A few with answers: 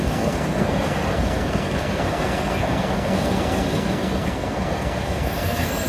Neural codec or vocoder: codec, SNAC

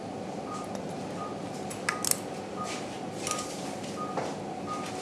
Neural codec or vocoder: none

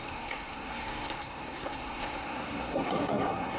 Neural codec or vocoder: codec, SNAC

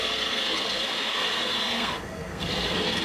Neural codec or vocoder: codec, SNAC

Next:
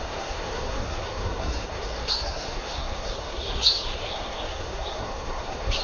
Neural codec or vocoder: codec, SNAC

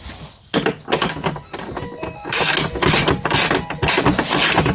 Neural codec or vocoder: none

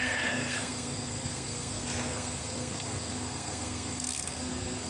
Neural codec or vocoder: codec, SNAC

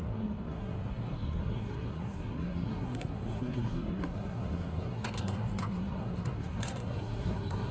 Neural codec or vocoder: codec, SNAC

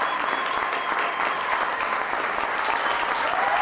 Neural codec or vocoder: none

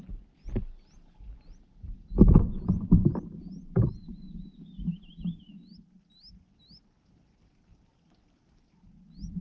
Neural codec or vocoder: none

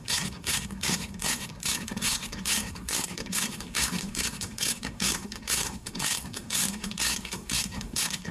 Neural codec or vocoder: codec, SNAC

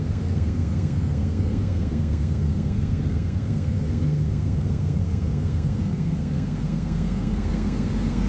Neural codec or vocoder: codec, SNAC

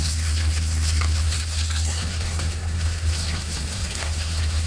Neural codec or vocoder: codec, SNAC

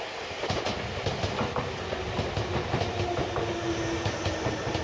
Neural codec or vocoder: none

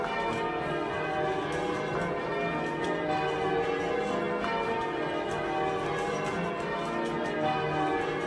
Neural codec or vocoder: none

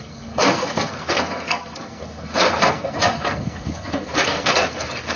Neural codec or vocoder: codec, SNAC